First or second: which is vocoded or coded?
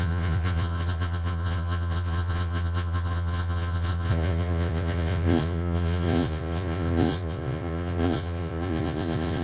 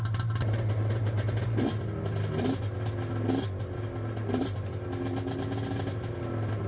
first